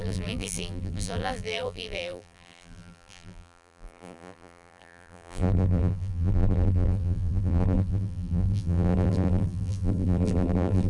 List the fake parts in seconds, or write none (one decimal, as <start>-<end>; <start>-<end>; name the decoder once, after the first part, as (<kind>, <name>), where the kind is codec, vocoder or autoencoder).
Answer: 0.0-10.9 (vocoder, BigVGAN v2)